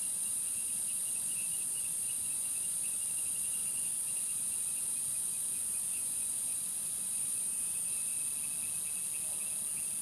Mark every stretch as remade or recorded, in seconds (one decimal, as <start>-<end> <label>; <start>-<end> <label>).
0.0-8.1 remade; 8.1-10.0 recorded